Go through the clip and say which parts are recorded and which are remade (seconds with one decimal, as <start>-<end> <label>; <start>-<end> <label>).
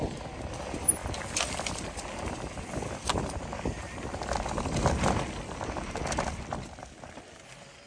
0.0-7.9 recorded